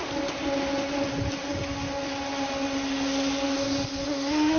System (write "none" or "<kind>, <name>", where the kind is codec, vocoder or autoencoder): none